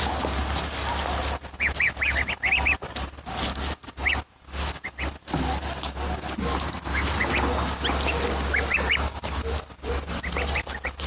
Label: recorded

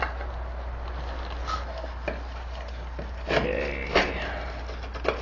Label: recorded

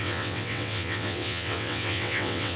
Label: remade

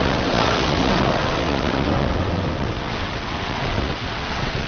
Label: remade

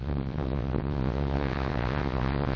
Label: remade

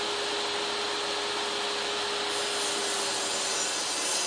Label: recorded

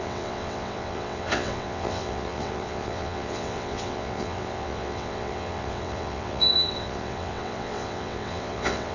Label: remade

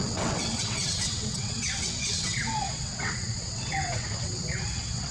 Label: remade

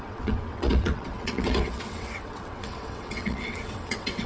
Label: remade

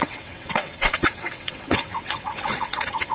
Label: remade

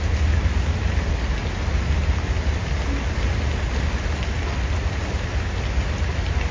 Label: recorded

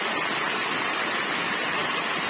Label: recorded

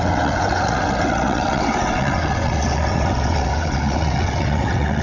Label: remade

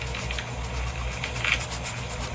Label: recorded